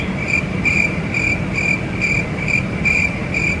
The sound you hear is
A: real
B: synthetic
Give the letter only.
A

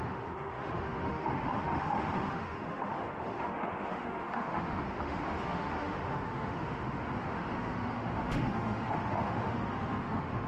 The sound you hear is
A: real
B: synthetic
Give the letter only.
B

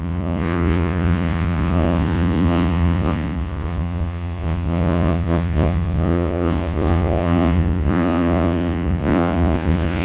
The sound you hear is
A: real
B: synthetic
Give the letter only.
B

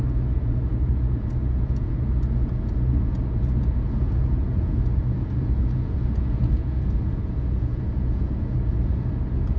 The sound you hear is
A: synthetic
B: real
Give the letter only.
A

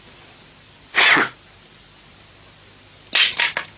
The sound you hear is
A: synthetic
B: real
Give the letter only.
B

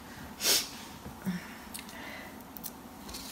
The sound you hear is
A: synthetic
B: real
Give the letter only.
B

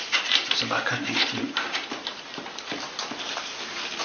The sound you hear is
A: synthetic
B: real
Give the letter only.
A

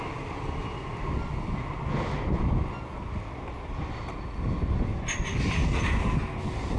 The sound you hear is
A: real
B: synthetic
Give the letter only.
A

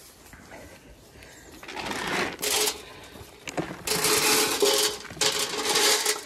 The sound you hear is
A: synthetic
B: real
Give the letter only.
B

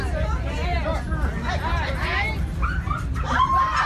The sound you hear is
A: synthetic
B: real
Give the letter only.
B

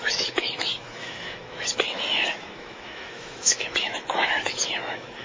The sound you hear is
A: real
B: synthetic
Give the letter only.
B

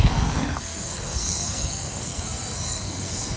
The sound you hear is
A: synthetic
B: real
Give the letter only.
A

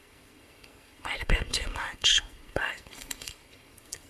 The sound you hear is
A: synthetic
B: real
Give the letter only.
A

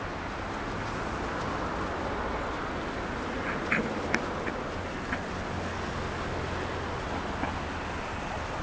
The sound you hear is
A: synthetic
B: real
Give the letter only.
B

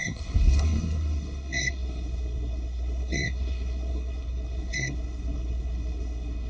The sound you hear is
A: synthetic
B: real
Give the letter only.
A